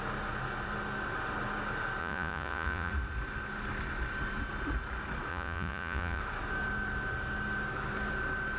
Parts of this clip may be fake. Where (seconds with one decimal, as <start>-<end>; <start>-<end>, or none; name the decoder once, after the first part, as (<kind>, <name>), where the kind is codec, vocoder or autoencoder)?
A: 2.0-2.9 (vocoder, Vocos); 5.3-6.2